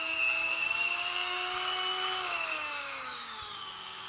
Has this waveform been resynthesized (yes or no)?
yes